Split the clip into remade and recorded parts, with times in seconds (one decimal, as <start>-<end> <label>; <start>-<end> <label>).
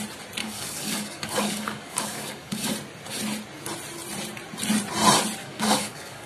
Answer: 0.0-0.4 recorded; 0.4-2.7 remade; 2.7-5.4 recorded; 5.4-6.3 remade